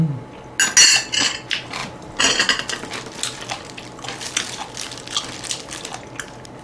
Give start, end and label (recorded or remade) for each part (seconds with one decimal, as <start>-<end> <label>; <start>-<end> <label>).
0.0-6.6 recorded